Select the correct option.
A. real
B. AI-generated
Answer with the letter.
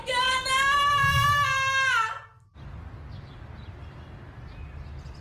A